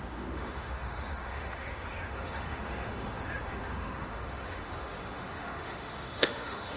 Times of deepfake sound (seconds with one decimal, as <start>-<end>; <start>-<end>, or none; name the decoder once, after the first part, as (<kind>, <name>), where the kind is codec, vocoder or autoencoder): 0.0-6.8 (autoencoder, DAC-VAE)